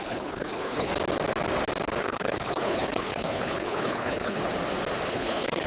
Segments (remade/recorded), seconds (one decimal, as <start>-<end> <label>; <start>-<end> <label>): 0.0-0.9 remade; 0.9-2.0 recorded; 2.0-4.4 remade; 4.4-5.1 recorded; 5.1-5.7 remade